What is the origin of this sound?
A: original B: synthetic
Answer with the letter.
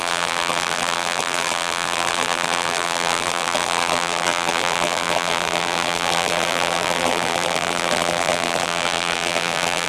B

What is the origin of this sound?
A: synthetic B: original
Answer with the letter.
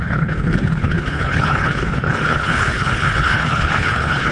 A